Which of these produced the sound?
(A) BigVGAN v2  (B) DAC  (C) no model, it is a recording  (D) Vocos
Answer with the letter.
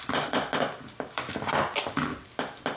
C